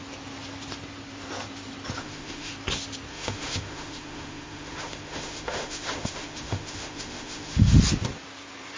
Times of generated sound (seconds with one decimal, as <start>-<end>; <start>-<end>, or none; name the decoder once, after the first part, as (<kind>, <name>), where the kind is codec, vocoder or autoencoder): 2.0-2.5 (autoencoder, DAC-VAE); 3.1-7.8